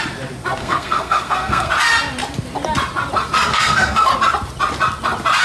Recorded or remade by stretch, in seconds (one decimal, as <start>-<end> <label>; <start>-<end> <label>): 0.0-0.6 recorded; 0.6-1.7 remade; 1.7-3.5 recorded; 3.5-4.1 remade; 4.1-5.4 recorded